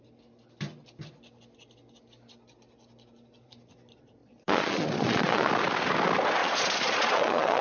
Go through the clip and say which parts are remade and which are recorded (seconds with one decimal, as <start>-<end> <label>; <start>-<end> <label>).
0.0-4.2 recorded; 4.2-5.5 remade; 5.5-6.4 recorded; 6.4-7.6 remade